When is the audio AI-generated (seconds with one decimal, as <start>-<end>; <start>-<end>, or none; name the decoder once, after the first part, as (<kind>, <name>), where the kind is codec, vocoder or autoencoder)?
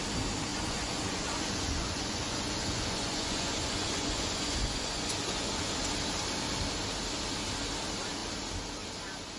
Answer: 0.5-5.6 (vocoder, Vocos)